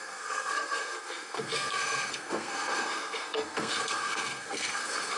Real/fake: fake